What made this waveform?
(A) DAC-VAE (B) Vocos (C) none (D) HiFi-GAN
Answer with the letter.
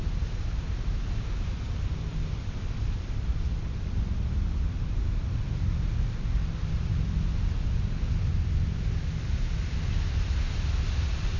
C